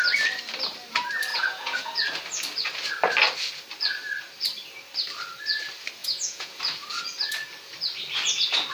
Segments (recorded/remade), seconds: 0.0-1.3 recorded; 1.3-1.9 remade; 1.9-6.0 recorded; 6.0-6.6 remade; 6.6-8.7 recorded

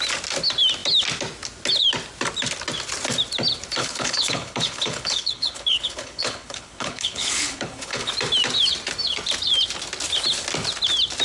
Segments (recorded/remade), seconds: 0.0-3.8 recorded; 3.8-8.1 remade; 8.1-11.2 recorded

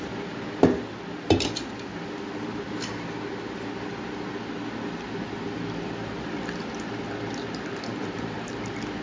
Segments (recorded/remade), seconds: 0.0-7.9 recorded; 7.9-8.5 remade; 8.5-9.0 recorded

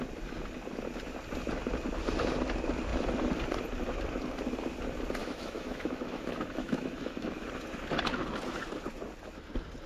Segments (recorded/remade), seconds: 0.0-5.2 recorded; 5.2-7.5 remade; 7.5-9.9 recorded